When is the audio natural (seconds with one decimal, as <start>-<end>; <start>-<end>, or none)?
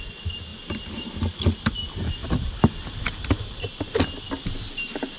0.0-0.5; 1.1-5.2